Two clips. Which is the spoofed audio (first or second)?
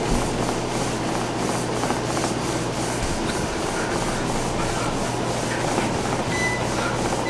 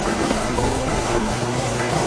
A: second